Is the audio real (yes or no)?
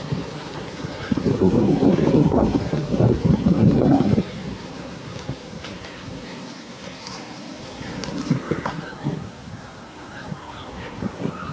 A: no